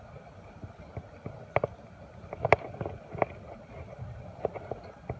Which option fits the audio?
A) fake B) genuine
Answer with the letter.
B